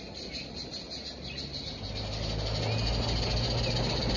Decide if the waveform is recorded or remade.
recorded